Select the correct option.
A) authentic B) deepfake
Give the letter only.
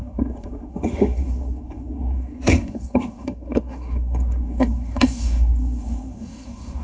B